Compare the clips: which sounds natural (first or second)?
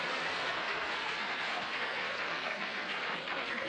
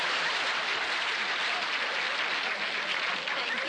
second